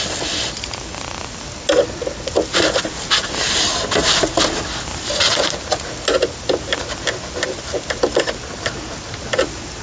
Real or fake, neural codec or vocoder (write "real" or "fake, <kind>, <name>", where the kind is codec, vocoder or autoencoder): real